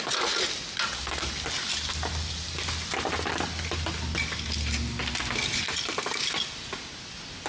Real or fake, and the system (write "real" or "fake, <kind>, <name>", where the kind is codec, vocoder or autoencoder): real